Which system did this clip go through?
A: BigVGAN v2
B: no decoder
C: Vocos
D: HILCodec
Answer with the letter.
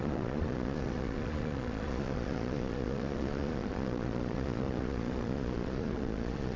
C